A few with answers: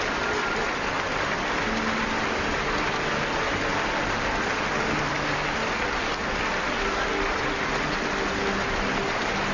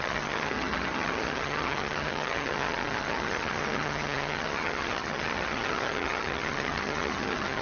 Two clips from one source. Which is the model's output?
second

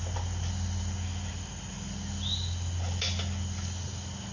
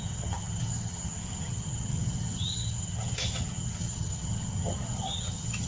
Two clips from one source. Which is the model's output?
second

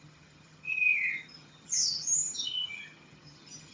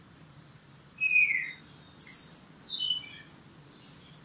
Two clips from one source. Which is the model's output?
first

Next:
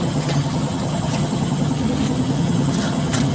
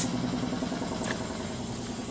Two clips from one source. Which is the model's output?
first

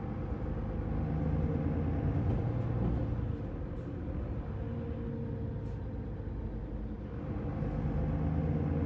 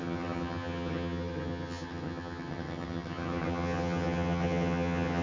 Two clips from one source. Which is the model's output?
second